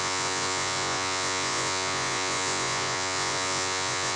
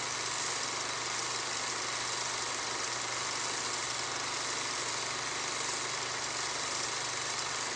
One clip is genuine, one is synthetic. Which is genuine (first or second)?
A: second